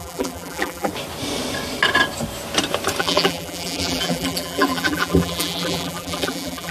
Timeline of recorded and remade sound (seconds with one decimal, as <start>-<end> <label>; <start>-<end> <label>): 0.0-0.9 remade; 0.9-3.0 recorded; 3.0-6.7 remade

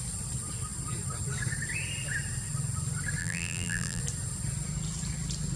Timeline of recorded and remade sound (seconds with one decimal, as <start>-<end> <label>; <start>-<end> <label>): 0.0-3.2 recorded; 3.2-4.0 remade; 4.0-5.6 recorded

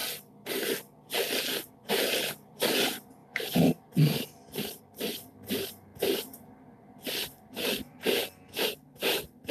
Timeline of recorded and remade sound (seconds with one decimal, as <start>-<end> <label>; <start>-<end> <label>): 0.0-1.7 recorded; 1.7-5.9 remade; 5.9-6.9 recorded; 6.9-8.2 remade; 8.2-9.5 recorded